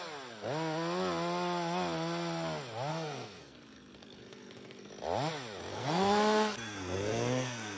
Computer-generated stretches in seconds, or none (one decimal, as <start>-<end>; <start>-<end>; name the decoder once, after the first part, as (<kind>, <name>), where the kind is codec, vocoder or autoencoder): 2.9-4.9 (codec, SNAC); 5.7-7.8